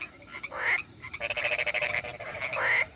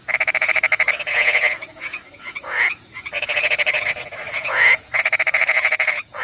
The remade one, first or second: second